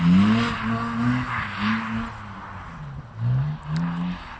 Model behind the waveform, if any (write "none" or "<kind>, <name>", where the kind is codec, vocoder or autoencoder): none